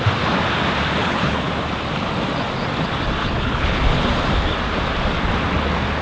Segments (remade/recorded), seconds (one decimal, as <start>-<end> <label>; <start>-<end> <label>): 0.0-1.0 recorded; 1.0-1.5 remade; 1.5-3.2 recorded; 3.2-3.8 remade; 3.8-6.0 recorded